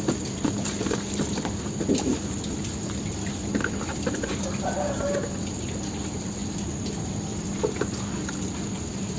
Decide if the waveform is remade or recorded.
recorded